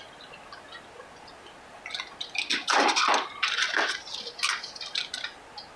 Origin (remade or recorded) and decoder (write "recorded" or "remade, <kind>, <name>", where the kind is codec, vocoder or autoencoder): recorded